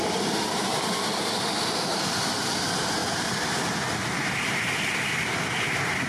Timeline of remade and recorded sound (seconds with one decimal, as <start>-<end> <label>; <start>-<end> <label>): 0.0-0.7 recorded; 0.7-2.6 remade; 2.6-3.0 recorded; 3.0-5.0 remade; 5.0-6.1 recorded